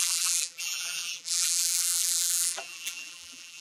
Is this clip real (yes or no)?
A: no